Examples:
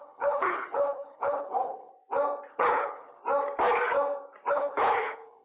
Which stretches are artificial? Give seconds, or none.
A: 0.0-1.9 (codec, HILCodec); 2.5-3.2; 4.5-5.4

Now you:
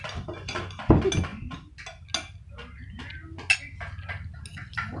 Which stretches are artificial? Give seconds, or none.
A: none

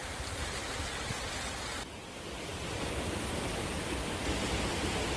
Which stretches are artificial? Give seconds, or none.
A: none

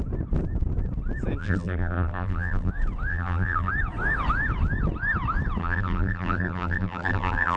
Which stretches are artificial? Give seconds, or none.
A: 1.4-2.7 (vocoder, BigVGAN v2); 3.1-3.7; 5.6-7.6

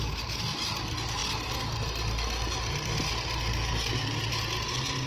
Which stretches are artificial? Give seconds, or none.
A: none

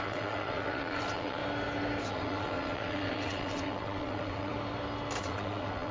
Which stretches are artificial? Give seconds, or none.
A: 0.0-1.4 (vocoder, WaveNeXt); 2.0-4.5; 5.2-5.9